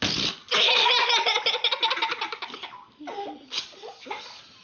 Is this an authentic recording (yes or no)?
yes